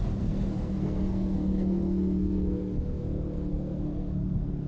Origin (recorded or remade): remade